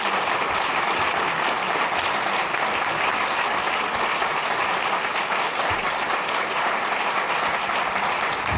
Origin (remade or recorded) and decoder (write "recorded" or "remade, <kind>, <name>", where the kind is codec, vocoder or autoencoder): recorded